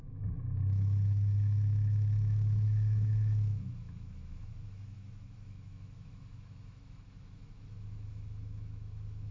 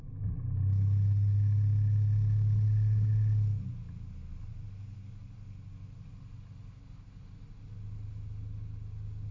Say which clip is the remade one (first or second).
first